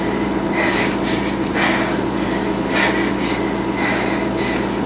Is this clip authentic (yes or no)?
yes